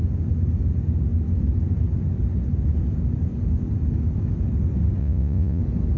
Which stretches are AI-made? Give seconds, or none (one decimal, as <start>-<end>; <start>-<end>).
5.0-5.6

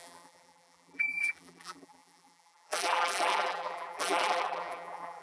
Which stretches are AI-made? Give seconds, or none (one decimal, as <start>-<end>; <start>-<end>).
0.0-5.2

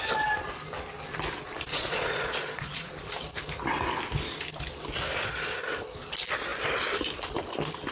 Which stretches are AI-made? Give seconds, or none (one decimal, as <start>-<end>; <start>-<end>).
1.7-2.9

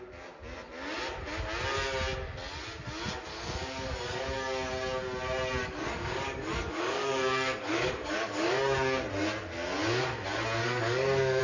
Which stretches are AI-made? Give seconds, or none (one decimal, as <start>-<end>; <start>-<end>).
3.3-4.7; 5.6-8.5; 10.6-11.4

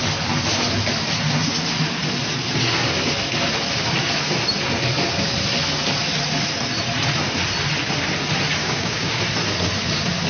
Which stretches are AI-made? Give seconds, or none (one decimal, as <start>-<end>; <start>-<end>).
8.6-9.2